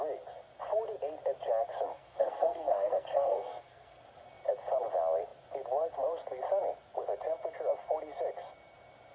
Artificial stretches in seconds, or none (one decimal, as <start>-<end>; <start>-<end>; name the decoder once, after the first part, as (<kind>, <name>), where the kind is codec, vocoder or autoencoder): 1.9-4.0 (codec, SNAC)